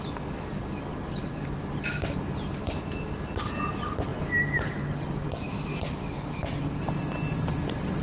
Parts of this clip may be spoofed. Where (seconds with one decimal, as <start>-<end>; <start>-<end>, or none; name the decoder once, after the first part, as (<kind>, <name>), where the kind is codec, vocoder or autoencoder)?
0.9-2.1 (vocoder, BigVGAN v2); 6.4-7.0